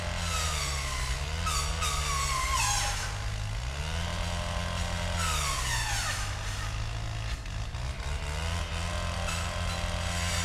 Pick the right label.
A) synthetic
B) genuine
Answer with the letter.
B